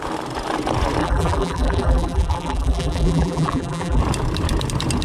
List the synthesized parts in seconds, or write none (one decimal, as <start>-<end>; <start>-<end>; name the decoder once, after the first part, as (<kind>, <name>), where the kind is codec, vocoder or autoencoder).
1.0-4.0 (vocoder, BigVGAN v2)

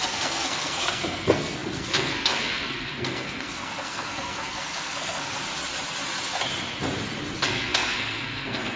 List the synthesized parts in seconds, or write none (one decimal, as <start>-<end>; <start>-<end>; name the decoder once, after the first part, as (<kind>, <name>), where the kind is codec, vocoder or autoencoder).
0.0-5.5 (codec, SNAC); 7.4-8.8

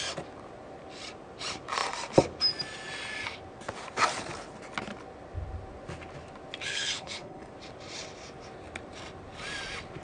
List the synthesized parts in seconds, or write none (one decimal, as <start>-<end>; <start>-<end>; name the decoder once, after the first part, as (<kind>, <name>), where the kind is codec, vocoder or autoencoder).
6.7-7.5 (codec, HILCodec)

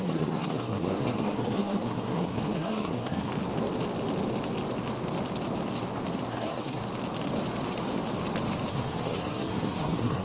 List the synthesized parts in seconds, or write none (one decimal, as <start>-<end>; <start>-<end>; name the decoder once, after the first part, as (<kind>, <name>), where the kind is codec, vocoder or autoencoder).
0.0-3.3 (codec, SNAC); 6.3-6.8; 8.7-10.2

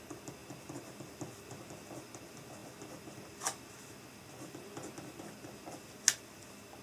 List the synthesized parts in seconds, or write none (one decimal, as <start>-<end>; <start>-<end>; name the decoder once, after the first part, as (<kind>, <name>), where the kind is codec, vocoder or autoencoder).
none

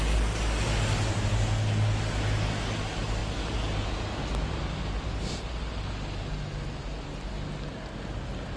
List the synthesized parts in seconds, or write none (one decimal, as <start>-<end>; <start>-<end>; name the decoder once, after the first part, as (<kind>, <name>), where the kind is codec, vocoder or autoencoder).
none

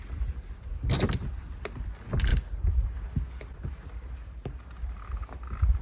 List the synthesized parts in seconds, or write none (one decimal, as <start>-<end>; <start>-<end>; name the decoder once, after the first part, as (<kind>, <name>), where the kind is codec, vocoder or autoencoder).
none